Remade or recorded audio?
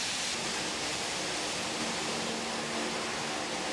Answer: recorded